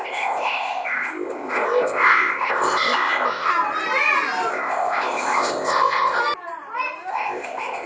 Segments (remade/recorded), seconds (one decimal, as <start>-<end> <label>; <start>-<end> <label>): 0.0-3.5 remade; 3.5-4.5 recorded; 4.5-6.2 remade; 6.2-7.1 recorded; 7.1-7.9 remade